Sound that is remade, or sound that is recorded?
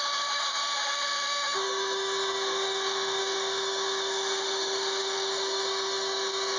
remade